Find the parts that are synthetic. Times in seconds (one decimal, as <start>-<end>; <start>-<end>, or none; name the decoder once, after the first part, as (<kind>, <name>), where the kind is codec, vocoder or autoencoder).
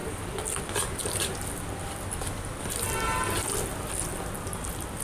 0.0-0.6 (vocoder, BigVGAN v2); 1.0-4.0